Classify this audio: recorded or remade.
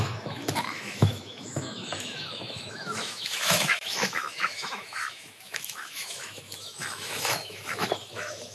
remade